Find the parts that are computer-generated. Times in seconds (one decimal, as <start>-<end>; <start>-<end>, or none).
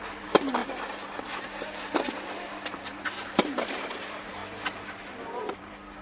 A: 0.0-0.6; 1.2-2.9; 4.0-4.4; 5.1-6.0